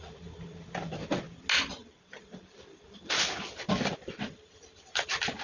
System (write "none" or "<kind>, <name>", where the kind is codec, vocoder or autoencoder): none